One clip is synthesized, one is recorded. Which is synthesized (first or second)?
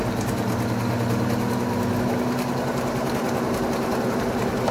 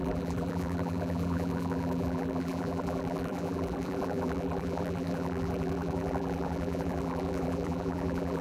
second